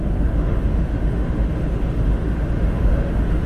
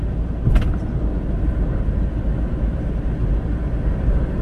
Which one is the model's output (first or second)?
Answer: first